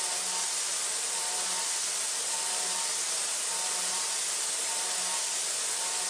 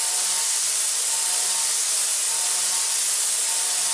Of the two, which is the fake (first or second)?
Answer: first